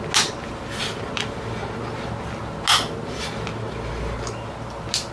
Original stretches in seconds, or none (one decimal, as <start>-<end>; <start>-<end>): 0.0-5.1